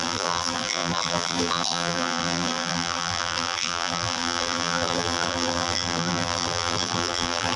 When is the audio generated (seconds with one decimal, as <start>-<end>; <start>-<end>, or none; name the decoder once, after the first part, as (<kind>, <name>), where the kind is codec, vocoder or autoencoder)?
0.0-7.6 (vocoder, BigVGAN v2)